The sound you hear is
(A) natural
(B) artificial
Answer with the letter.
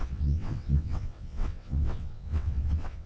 B